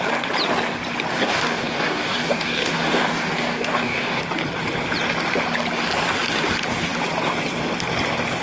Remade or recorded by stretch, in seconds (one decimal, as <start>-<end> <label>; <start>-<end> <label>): 0.0-1.1 recorded; 1.1-4.2 remade; 4.2-8.4 recorded